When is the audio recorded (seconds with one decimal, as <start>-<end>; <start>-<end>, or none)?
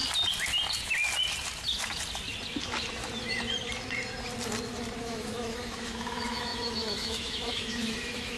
0.0-5.0